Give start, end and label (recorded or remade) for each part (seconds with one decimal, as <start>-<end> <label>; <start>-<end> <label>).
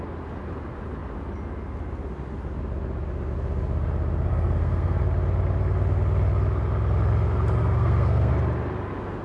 0.0-4.3 recorded; 4.3-5.0 remade; 5.0-7.6 recorded; 7.6-8.3 remade; 8.3-9.2 recorded